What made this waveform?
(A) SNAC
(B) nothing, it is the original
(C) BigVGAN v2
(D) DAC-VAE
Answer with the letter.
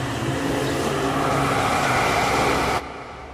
B